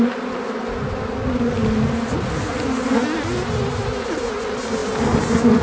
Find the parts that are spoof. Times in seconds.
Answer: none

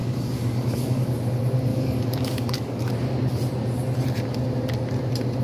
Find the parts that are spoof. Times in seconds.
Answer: 0.0-1.1 (codec, DAC); 1.7-2.9

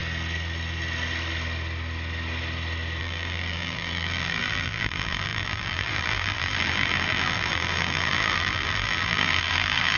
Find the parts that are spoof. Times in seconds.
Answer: 3.0-10.0 (vocoder, BigVGAN v2)

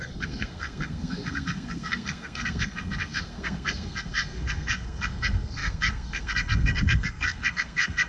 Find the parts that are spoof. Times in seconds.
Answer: 0.0-8.1 (codec, SNAC)

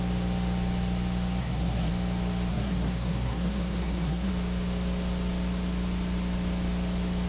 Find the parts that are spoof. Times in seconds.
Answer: 1.4-1.9 (codec, SNAC); 2.5-4.3

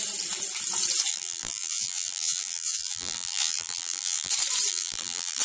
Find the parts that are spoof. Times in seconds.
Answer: 1.1-4.3 (vocoder, BigVGAN v2); 4.7-5.4